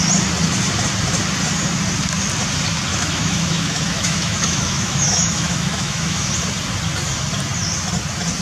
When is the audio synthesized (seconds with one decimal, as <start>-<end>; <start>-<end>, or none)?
2.9-6.3